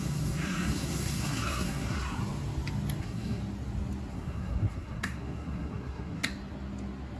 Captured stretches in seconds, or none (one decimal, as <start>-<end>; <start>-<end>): 2.2-3.0; 3.4-4.1; 6.3-7.2